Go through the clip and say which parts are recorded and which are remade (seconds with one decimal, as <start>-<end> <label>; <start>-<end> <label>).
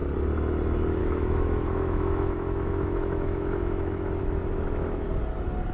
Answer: 0.0-1.0 recorded; 1.0-4.2 remade; 4.2-5.7 recorded